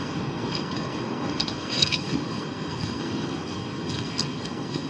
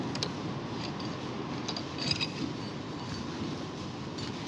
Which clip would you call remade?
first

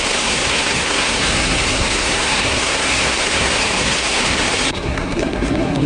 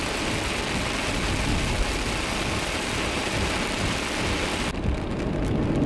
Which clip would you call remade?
first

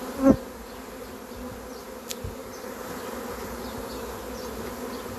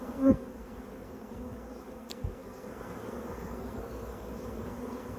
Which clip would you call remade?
second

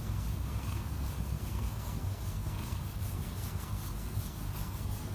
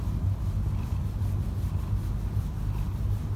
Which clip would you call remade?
first